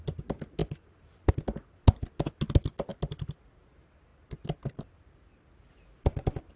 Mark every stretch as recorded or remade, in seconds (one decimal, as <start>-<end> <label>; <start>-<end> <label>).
0.0-6.6 recorded

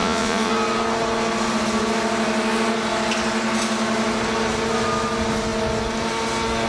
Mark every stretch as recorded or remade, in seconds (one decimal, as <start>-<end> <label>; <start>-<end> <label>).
0.0-0.5 remade; 0.5-6.7 recorded